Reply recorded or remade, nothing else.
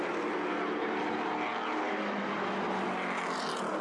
recorded